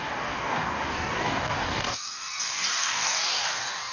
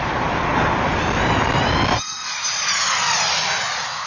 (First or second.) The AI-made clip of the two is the first